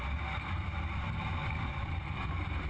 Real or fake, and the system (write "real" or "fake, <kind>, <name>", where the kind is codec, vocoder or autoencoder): real